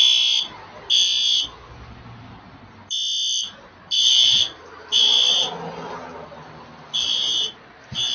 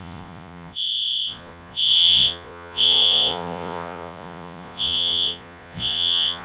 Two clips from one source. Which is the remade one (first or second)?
second